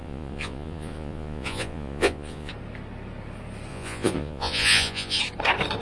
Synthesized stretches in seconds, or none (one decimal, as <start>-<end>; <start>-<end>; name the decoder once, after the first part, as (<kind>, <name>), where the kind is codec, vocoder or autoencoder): 0.0-2.5 (vocoder, Vocos); 3.7-5.2